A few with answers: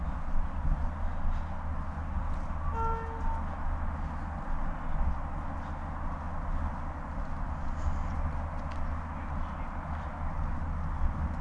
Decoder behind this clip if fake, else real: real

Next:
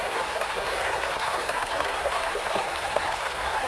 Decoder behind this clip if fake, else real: fake, codec, SNAC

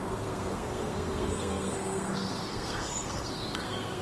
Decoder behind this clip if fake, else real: fake, codec, SNAC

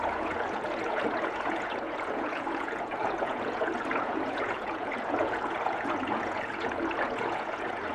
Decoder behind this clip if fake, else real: fake, vocoder, Vocos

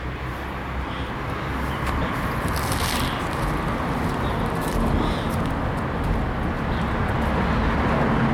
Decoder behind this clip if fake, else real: real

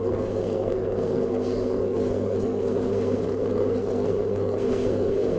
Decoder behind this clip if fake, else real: fake, codec, SNAC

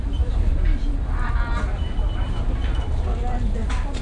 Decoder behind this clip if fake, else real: real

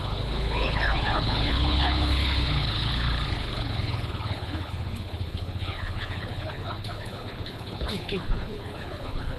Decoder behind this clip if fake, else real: fake, codec, HILCodec